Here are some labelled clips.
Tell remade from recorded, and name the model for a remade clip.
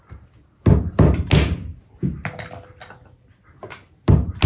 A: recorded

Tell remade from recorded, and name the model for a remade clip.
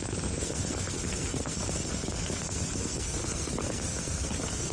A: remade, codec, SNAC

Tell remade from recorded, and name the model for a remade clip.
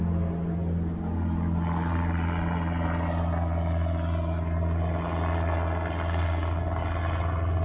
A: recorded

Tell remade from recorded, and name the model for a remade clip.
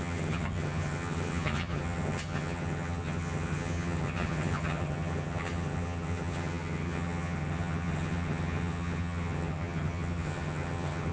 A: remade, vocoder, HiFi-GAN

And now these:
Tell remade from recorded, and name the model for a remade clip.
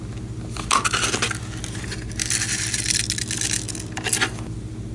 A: recorded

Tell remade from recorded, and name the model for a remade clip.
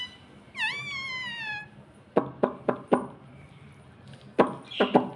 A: recorded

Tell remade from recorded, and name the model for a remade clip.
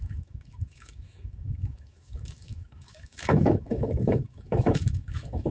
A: remade, autoencoder, DAC-VAE